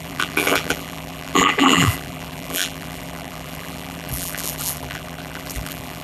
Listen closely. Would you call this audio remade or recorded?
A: remade